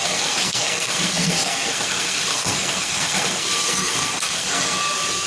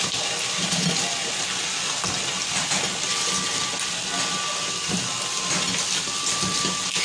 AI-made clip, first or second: first